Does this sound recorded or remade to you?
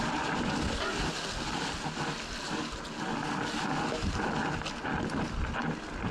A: recorded